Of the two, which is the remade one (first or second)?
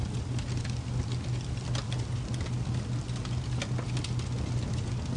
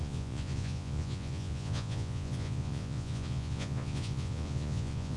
second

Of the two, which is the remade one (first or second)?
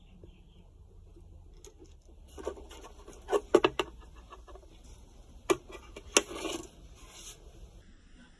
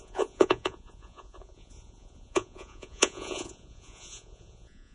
second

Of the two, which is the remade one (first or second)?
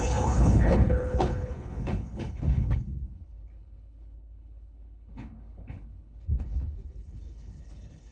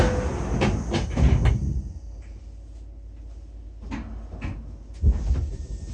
first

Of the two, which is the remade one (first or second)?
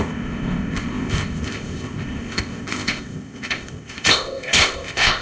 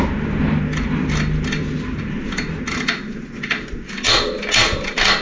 first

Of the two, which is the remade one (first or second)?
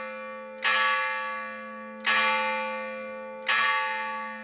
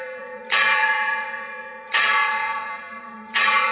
second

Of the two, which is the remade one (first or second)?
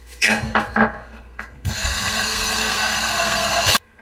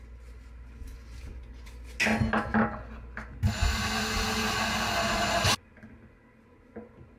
first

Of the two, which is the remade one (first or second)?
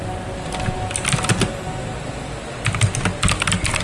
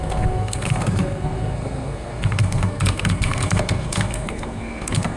second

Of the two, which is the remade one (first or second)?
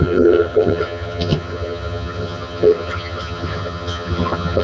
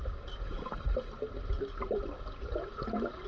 first